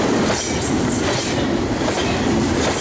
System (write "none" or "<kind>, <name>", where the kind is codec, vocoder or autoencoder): none